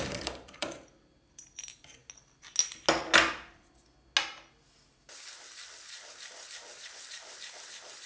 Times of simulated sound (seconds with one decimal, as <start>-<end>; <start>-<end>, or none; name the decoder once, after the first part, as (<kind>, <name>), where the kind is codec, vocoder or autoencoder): 0.0-2.0 (vocoder, BigVGAN v2); 6.7-8.1

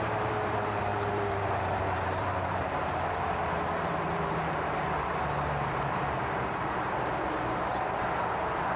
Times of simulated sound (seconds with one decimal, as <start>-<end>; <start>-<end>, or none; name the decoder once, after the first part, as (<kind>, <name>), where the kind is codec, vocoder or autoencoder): 0.0-7.7 (vocoder, BigVGAN v2)

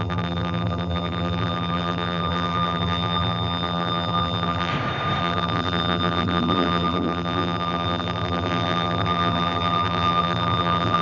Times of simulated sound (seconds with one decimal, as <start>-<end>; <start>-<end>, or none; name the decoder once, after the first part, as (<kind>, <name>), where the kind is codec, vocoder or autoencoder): 0.0-4.7 (vocoder, BigVGAN v2); 5.2-11.0

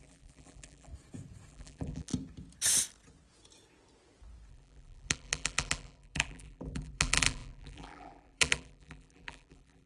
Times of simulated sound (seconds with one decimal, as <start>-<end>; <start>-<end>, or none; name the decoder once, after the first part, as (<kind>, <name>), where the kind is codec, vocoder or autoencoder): 0.0-0.9 (vocoder, BigVGAN v2); 1.5-2.1; 4.5-9.9

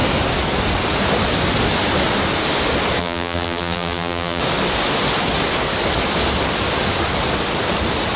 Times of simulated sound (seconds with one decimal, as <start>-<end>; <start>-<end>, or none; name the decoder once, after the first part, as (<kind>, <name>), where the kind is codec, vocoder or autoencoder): 3.0-4.4 (vocoder, BigVGAN v2)

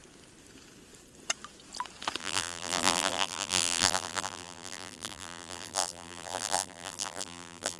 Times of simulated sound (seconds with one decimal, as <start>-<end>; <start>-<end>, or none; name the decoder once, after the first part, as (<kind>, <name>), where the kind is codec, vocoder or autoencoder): 2.2-7.8 (vocoder, BigVGAN v2)

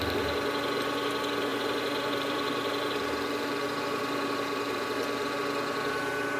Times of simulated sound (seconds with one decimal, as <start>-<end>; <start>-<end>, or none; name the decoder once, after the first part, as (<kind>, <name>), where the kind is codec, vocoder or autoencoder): 1.5-5.3 (vocoder, BigVGAN v2)